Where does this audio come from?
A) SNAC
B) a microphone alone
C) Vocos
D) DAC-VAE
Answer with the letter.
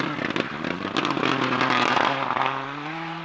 B